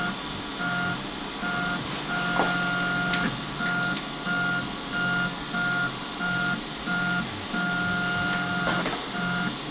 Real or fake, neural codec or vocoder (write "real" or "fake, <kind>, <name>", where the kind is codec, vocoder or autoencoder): real